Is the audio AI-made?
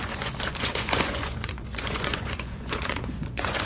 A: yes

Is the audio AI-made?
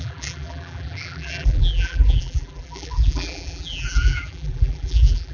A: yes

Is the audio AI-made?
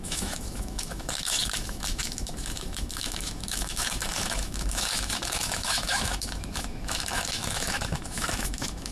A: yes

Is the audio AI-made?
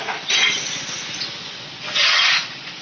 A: yes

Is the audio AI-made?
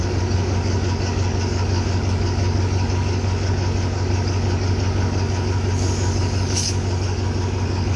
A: yes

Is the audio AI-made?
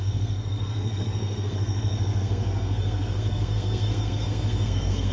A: yes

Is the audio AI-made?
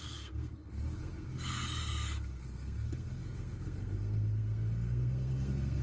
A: yes